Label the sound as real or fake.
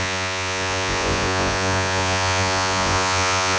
fake